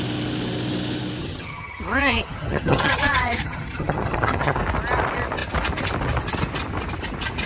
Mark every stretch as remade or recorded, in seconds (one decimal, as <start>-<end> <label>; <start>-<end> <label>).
0.0-1.2 recorded; 1.2-4.6 remade; 4.6-7.5 recorded